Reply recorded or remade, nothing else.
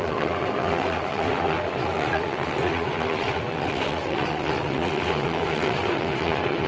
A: remade